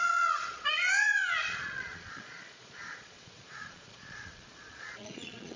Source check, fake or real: fake